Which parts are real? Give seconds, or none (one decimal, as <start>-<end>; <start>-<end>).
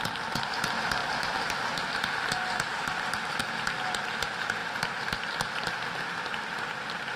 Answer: 0.0-1.0; 1.8-2.7; 3.4-7.2